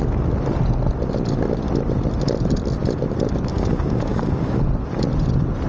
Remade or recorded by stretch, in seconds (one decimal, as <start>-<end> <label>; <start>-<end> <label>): 0.0-3.5 recorded; 3.5-4.6 remade; 4.6-5.7 recorded